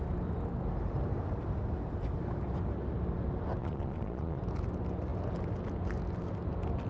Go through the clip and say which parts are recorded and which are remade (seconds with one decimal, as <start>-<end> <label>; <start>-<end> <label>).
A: 0.0-3.6 recorded; 3.6-4.4 remade; 4.4-6.9 recorded